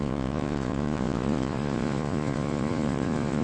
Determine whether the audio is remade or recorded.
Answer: remade